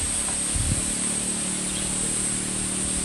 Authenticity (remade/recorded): recorded